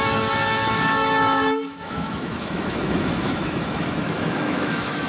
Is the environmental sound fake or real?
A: fake